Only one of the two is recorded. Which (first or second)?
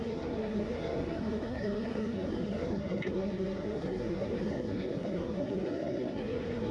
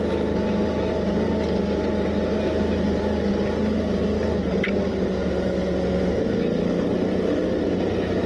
second